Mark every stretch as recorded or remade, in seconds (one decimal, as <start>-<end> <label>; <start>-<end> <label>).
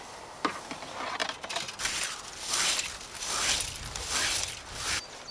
0.0-5.3 recorded